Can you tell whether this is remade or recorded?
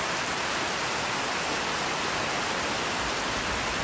recorded